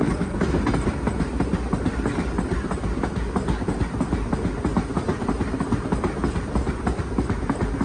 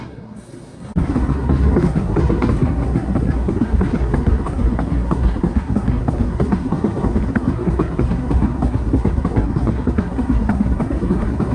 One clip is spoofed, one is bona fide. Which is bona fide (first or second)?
first